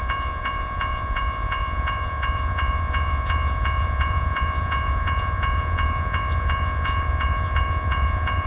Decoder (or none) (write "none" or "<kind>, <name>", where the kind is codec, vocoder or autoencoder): vocoder, Vocos